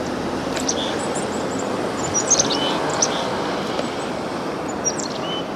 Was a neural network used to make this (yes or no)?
no